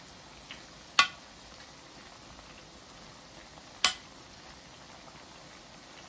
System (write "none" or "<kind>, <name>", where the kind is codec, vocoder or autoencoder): none